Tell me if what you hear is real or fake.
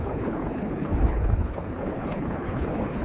fake